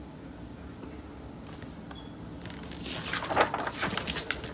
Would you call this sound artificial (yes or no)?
no